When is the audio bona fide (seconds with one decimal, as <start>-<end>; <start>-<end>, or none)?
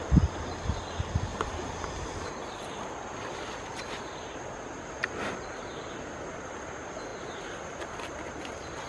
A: 0.0-8.9